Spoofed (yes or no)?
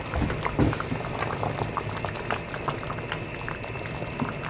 no